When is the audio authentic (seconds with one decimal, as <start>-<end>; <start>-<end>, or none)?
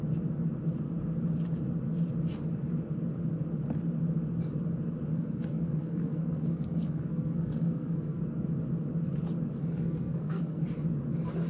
0.0-5.1; 8.2-9.6; 10.6-11.5